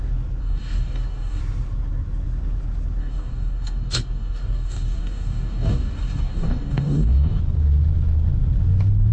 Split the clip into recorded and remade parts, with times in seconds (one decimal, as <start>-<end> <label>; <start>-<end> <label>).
0.0-0.4 recorded; 0.4-1.4 remade; 1.4-3.0 recorded; 3.0-7.4 remade; 7.4-9.1 recorded